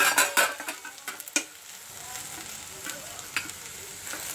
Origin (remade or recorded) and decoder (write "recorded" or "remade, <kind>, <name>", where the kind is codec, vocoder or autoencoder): recorded